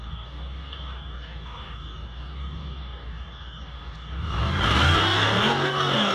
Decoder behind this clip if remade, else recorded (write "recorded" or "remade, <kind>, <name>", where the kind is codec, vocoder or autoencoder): remade, codec, DAC